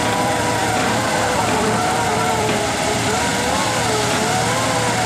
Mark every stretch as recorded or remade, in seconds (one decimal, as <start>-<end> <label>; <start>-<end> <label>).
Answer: 0.0-3.3 remade; 3.3-5.1 recorded